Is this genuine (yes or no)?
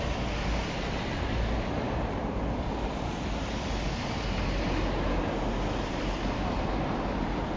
yes